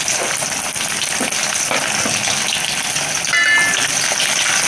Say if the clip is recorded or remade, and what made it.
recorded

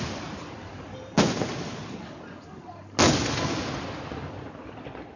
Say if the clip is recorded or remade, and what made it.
recorded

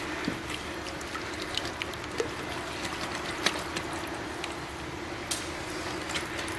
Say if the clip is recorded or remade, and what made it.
recorded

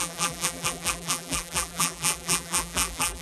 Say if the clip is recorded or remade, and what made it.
remade, vocoder, BigVGAN v2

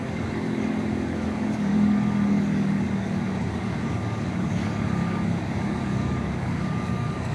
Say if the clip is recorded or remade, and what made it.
remade, codec, DAC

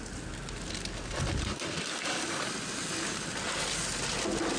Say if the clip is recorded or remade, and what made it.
recorded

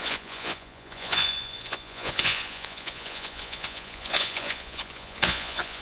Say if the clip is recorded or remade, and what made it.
remade, vocoder, Vocos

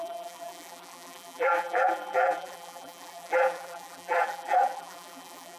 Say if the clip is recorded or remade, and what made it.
remade, vocoder, BigVGAN v2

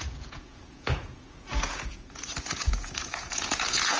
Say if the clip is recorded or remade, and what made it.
remade, vocoder, Vocos